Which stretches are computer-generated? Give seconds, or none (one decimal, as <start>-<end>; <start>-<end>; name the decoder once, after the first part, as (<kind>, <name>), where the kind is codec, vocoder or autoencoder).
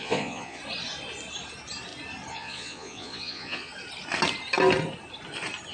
0.0-0.6 (vocoder, Vocos); 2.3-3.7